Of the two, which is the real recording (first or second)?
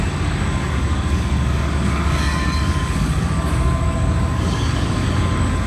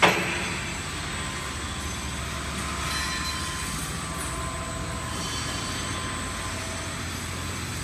second